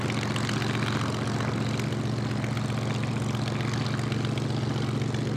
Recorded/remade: recorded